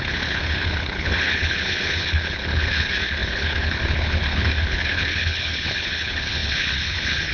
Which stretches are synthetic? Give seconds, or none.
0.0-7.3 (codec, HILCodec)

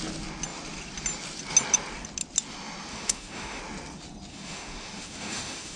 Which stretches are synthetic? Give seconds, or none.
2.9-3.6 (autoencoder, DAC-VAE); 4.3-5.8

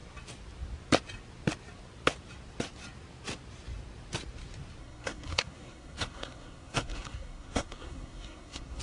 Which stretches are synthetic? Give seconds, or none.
4.8-8.8 (codec, SNAC)

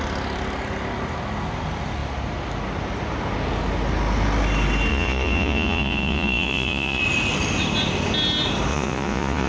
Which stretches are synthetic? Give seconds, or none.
4.9-7.0 (vocoder, Vocos); 8.7-9.5